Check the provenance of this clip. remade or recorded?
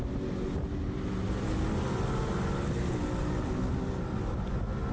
recorded